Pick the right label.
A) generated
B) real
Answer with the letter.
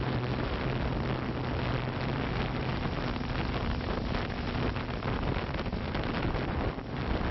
B